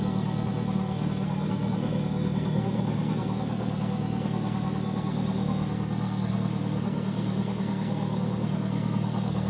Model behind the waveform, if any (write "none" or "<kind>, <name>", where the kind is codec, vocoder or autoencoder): codec, SNAC